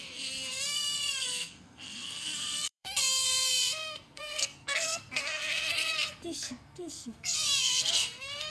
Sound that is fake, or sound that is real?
fake